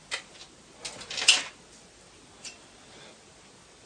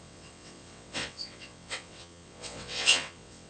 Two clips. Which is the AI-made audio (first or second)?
second